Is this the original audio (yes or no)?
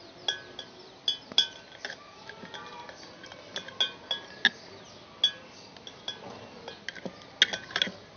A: yes